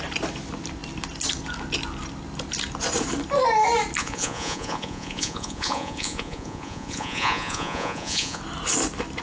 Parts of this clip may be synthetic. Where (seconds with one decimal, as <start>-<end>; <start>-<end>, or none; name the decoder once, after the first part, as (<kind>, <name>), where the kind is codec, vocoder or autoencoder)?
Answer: 4.0-8.4 (vocoder, Vocos)